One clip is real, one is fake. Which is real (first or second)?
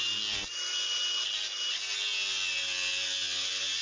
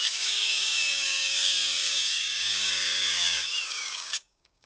first